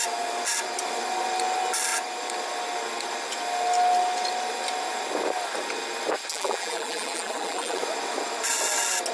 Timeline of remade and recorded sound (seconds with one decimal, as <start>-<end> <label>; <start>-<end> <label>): 0.0-6.3 recorded; 6.3-7.8 remade; 7.8-9.1 recorded